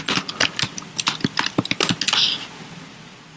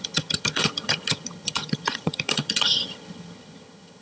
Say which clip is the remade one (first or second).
second